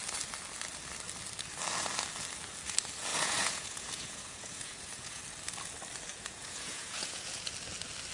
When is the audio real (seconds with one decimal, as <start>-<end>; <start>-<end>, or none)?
0.0-3.1; 5.2-6.1; 7.5-8.1